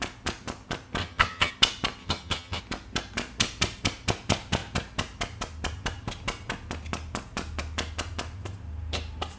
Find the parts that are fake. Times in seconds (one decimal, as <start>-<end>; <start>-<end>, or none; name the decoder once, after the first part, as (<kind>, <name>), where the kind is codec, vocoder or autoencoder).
1.0-1.5 (vocoder, HiFi-GAN); 2.0-2.6